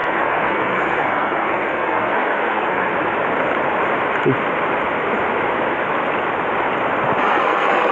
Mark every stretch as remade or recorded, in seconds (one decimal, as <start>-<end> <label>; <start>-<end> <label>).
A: 0.0-2.9 remade; 2.9-7.2 recorded; 7.2-7.9 remade